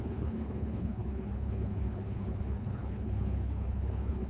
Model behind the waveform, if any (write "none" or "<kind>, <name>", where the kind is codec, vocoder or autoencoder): codec, HILCodec